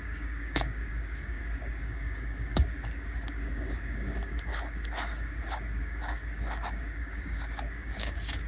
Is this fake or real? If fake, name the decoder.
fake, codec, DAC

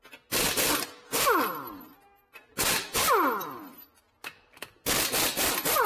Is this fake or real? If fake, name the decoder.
real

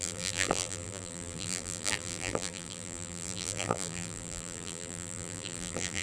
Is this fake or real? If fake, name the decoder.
fake, vocoder, BigVGAN v2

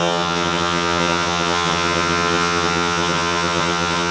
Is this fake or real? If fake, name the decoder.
fake, vocoder, HiFi-GAN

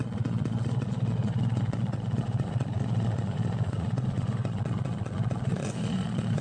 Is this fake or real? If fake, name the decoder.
fake, vocoder, Vocos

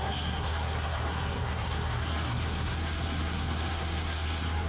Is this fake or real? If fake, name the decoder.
fake, codec, SNAC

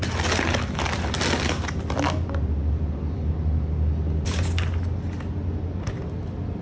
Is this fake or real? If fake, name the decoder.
real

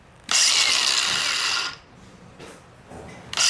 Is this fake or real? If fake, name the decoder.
real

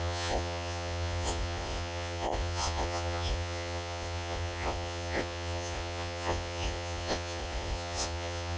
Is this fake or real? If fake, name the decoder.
fake, vocoder, Vocos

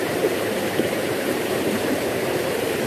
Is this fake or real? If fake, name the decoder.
fake, vocoder, BigVGAN v2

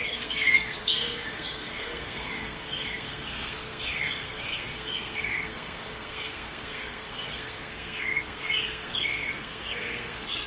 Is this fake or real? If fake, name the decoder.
fake, codec, SNAC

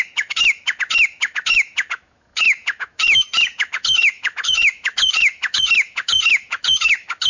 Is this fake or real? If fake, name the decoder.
fake, autoencoder, DAC-VAE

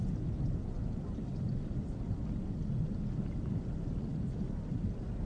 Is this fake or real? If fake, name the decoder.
real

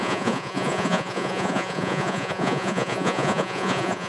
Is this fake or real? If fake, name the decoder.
fake, vocoder, Vocos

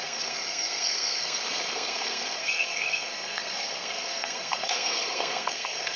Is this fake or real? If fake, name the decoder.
fake, codec, SNAC